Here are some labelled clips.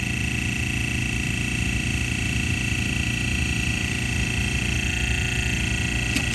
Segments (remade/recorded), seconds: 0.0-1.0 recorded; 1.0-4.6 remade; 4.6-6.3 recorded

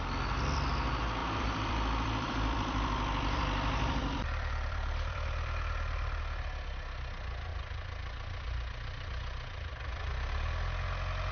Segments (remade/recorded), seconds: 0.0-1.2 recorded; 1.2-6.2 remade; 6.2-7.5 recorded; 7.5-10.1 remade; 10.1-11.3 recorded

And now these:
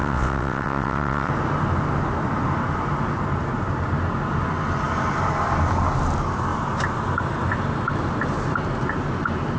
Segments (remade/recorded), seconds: 0.0-1.3 remade; 1.3-9.6 recorded